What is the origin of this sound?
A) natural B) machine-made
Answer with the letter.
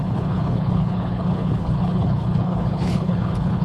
B